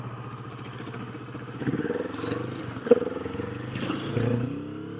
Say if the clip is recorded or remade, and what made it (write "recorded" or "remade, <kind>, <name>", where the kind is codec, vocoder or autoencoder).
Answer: recorded